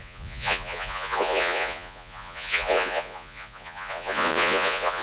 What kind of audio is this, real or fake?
fake